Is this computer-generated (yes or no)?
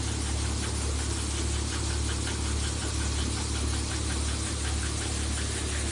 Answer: no